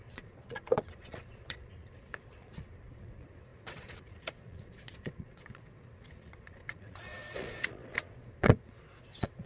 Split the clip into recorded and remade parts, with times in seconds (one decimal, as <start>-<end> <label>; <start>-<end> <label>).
0.0-9.5 remade